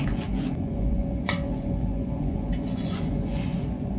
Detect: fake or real fake